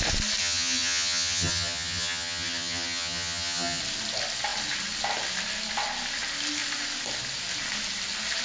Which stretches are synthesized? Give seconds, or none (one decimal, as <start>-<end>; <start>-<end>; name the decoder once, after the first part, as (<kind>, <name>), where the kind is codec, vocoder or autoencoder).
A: 0.4-3.8 (vocoder, HiFi-GAN)